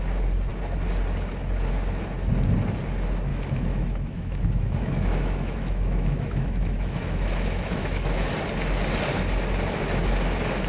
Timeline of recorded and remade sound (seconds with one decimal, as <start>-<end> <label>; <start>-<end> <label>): 0.0-3.3 recorded; 3.3-8.3 remade; 8.3-10.7 recorded